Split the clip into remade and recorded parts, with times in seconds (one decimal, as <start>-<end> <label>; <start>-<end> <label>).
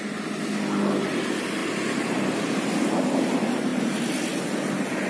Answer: 0.0-5.1 recorded